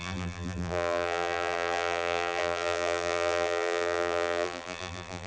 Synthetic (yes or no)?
yes